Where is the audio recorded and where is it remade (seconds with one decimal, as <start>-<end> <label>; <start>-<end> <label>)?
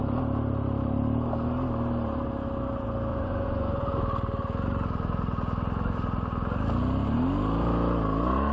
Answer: 0.0-3.1 recorded; 3.1-3.9 remade; 3.9-8.5 recorded